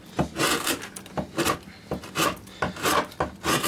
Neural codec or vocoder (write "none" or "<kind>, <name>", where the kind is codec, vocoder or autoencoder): none